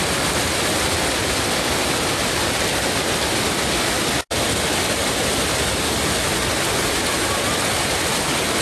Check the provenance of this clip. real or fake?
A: real